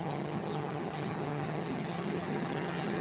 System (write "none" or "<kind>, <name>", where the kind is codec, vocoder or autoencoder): vocoder, HiFi-GAN